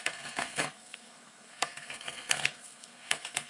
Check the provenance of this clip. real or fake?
fake